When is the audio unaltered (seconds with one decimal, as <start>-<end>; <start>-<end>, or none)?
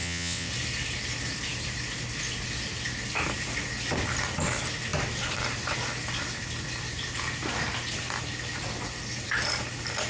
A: 0.5-10.1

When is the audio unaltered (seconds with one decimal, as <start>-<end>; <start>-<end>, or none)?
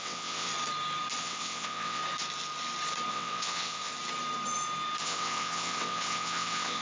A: 0.5-1.2; 2.0-3.1; 3.9-5.0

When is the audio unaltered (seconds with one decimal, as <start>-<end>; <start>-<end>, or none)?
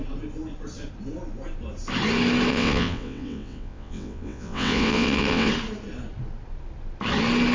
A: 0.0-2.5; 5.5-7.5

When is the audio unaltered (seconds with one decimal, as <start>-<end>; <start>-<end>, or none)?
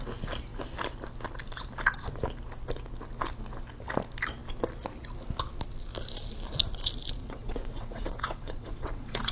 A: 0.0-7.2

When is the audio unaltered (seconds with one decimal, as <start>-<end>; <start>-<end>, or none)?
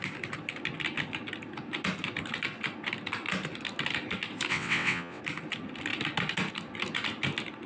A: 0.0-4.5; 5.2-7.7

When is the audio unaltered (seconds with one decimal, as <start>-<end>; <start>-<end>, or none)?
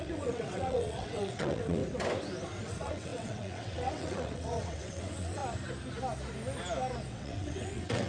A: 1.8-2.6; 5.4-7.1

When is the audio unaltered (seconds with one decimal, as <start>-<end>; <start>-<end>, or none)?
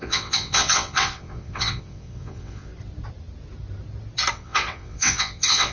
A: 2.7-4.3